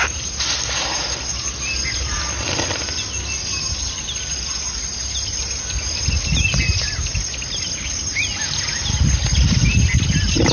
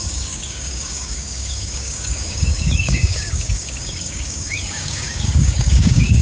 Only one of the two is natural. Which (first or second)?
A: first